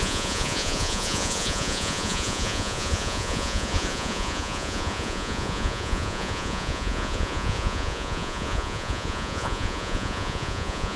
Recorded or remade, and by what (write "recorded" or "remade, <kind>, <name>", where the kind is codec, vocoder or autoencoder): remade, vocoder, Vocos